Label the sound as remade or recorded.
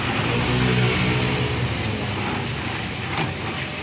recorded